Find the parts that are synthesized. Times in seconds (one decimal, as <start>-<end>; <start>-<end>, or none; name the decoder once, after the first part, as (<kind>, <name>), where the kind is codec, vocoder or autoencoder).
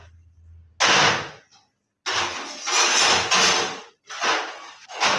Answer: none